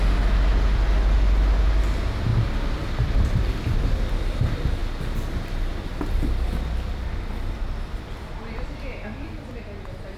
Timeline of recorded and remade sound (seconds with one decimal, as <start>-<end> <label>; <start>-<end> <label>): 0.0-10.2 recorded